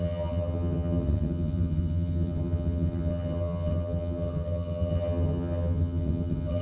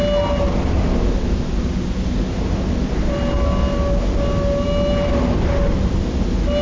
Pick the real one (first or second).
second